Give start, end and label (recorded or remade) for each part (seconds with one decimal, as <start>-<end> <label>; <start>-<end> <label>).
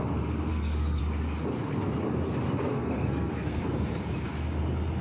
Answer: 0.0-0.5 recorded; 0.5-1.0 remade; 1.0-2.7 recorded; 2.7-3.6 remade; 3.6-5.0 recorded